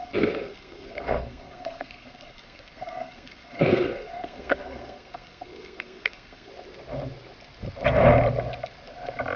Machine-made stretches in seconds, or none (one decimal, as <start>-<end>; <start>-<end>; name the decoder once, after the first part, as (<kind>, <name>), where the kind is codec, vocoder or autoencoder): 0.0-6.5 (codec, SNAC)